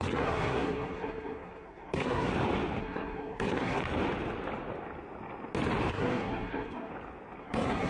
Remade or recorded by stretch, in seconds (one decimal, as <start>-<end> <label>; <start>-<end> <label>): 0.0-2.3 remade; 2.3-2.8 recorded; 2.8-3.8 remade; 3.8-5.9 recorded; 5.9-6.9 remade; 6.9-7.4 recorded; 7.4-7.9 remade